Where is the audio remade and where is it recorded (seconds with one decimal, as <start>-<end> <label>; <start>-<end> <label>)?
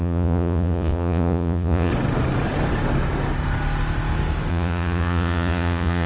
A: 0.0-1.9 remade; 1.9-4.5 recorded; 4.5-6.1 remade